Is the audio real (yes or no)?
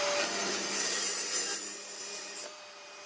yes